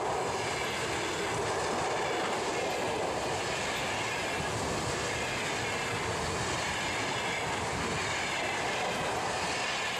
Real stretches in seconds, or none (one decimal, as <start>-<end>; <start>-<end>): 0.0-10.0